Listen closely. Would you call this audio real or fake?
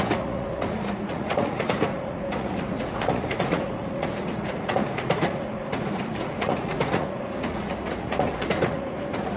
fake